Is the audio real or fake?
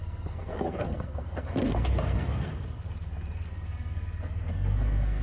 fake